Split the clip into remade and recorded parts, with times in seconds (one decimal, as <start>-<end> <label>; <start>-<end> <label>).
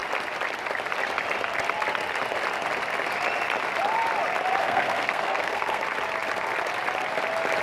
0.0-4.6 recorded; 4.6-5.8 remade; 5.8-7.6 recorded